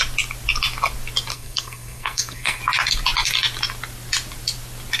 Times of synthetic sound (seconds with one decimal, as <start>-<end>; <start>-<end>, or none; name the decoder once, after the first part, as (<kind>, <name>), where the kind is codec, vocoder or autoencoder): 1.3-2.6 (codec, SNAC)